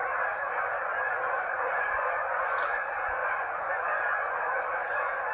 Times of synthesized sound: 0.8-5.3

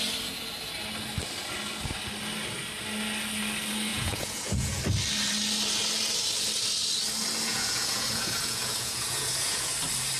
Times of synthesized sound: 3.9-4.8; 7.5-9.7

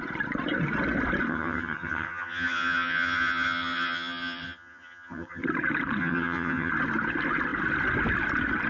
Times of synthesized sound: 1.3-5.4; 6.0-6.7

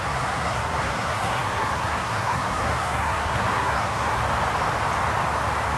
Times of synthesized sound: 0.0-4.2

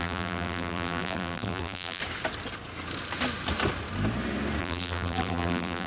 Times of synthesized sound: 0.0-2.0; 4.6-5.9

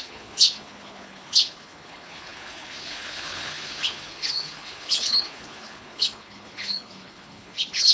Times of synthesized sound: 0.0-7.9

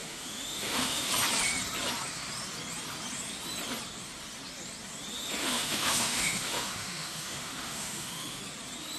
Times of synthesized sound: 0.0-1.1; 5.4-8.4

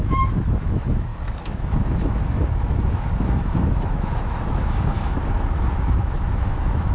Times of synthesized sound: 0.0-5.2; 5.7-6.9